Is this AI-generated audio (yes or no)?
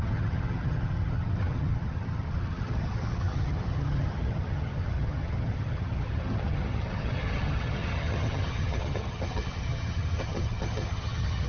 yes